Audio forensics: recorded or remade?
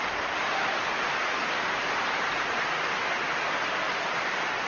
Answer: recorded